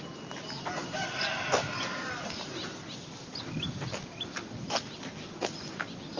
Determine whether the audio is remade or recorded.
recorded